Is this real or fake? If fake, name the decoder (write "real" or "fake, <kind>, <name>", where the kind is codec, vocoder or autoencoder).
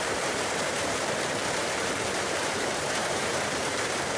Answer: fake, vocoder, BigVGAN v2